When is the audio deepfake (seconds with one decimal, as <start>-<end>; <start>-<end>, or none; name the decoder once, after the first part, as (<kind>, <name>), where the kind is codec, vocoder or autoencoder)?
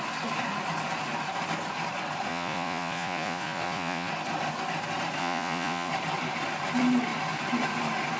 2.3-4.1 (vocoder, Vocos); 5.2-5.9